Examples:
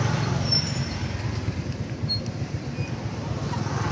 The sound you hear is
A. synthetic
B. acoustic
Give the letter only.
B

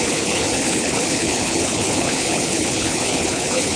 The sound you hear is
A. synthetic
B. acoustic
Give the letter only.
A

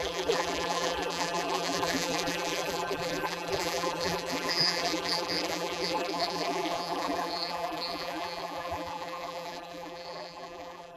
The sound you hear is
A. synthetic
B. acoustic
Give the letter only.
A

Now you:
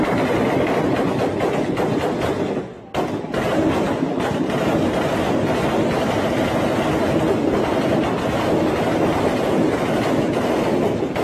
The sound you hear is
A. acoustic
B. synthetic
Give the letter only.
A